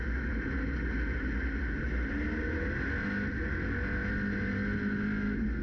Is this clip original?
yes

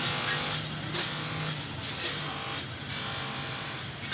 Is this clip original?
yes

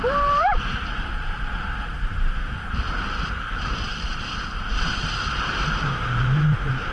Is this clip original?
no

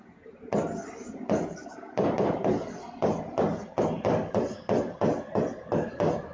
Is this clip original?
yes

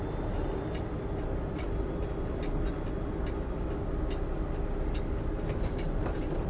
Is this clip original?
yes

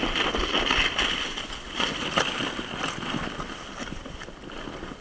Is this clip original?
yes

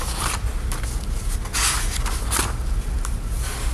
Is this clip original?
yes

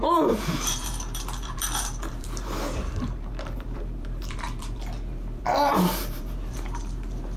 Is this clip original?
no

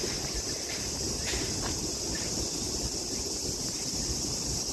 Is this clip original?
no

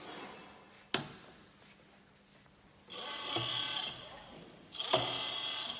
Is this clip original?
yes